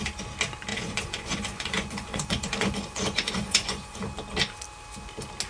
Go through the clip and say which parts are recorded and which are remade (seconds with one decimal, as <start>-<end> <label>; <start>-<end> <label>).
0.0-0.7 recorded; 0.7-4.0 remade; 4.0-5.5 recorded